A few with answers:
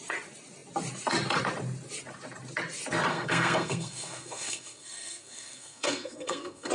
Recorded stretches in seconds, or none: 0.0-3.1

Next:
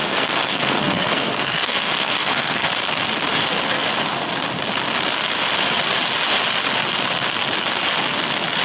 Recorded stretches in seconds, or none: 2.7-8.6